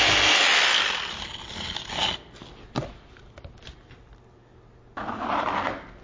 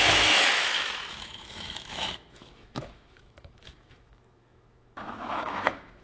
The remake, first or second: second